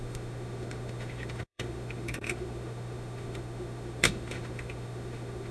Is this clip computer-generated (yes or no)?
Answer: yes